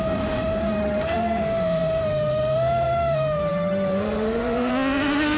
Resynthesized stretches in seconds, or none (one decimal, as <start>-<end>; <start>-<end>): 0.0-4.7